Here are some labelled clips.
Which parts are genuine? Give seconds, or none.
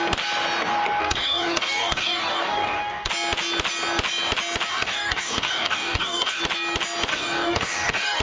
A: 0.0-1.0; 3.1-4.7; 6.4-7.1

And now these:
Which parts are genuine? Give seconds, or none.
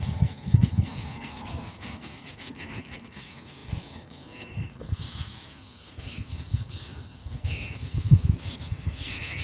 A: none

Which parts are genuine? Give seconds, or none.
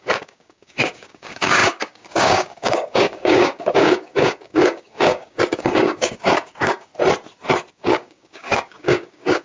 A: 6.9-7.7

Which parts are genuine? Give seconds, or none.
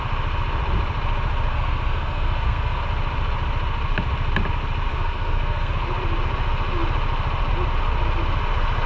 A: 0.0-1.5; 2.8-4.9; 5.7-8.9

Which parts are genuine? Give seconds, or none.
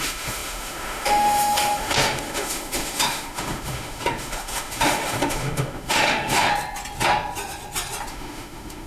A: 6.5-8.1